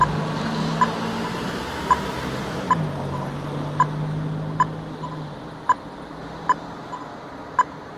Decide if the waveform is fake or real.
real